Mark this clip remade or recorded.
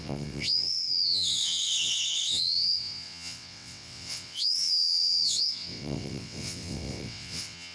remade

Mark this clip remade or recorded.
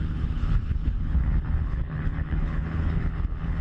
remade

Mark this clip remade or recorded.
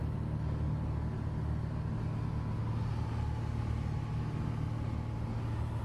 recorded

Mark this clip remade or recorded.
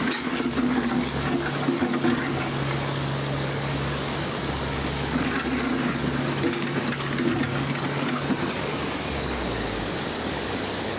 remade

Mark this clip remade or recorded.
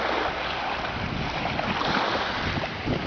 recorded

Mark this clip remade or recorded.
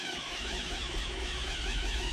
remade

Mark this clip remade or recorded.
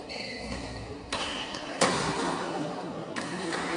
remade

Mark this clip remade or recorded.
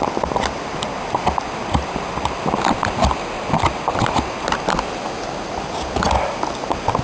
recorded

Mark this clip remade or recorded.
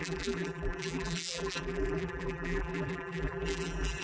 remade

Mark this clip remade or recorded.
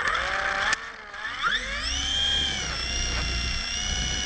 recorded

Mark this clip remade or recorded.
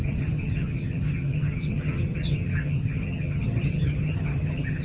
remade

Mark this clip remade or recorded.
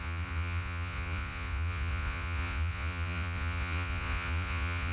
remade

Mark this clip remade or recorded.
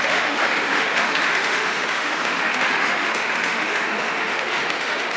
remade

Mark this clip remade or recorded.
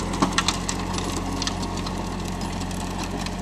recorded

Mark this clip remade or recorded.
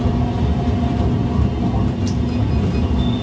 recorded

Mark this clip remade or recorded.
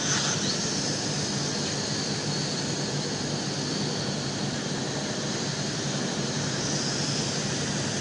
recorded